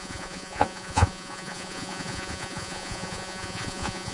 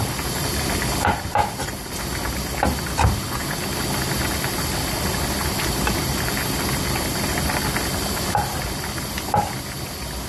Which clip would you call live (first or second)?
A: second